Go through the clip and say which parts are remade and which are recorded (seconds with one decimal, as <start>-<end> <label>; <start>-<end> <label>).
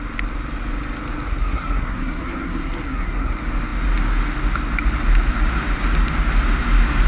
0.0-1.3 recorded; 1.3-3.3 remade; 3.3-7.1 recorded